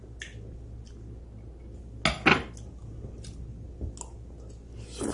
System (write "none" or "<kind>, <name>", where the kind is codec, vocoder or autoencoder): none